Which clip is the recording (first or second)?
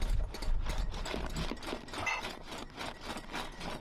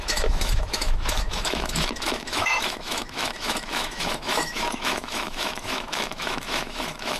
first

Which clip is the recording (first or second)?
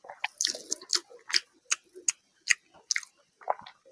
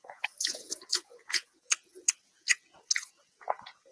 first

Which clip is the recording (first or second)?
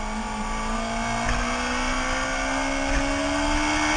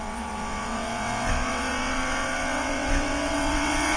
first